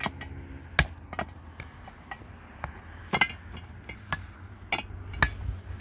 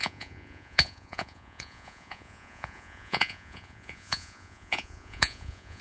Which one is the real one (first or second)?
first